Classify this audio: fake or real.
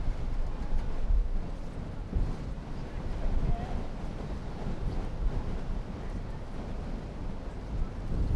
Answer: real